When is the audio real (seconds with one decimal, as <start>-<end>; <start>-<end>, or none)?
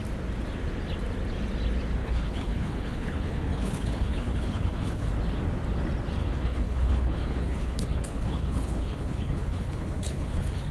0.0-2.0; 5.1-6.2